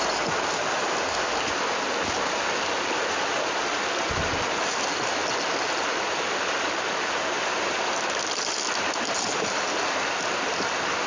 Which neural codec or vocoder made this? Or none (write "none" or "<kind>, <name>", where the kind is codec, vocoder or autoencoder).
none